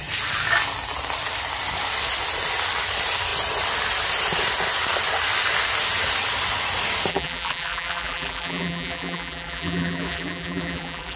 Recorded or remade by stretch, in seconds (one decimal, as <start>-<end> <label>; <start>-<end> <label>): 0.0-7.1 recorded; 7.1-11.2 remade